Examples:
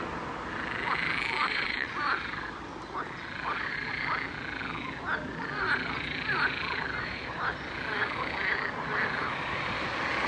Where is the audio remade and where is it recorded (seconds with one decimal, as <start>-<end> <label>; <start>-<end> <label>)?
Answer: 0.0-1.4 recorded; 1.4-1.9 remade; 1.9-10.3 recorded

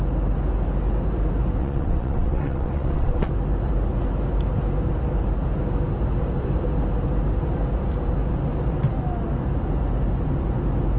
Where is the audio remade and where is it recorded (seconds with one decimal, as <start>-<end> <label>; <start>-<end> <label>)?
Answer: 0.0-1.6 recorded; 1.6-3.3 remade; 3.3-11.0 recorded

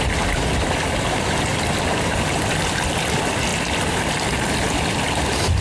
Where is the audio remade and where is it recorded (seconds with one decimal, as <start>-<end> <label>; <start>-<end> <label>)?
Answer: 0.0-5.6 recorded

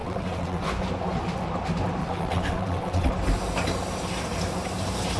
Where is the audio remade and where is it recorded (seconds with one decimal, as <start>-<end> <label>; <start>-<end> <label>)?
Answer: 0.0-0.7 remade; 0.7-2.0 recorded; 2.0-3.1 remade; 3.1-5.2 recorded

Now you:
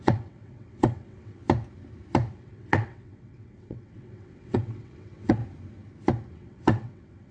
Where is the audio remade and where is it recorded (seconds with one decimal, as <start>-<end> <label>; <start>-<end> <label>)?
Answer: 0.0-1.4 remade; 1.4-2.3 recorded; 2.3-5.4 remade; 5.4-6.3 recorded; 6.3-7.3 remade